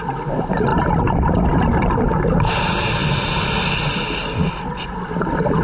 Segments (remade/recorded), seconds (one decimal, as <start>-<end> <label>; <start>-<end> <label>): 0.0-5.6 recorded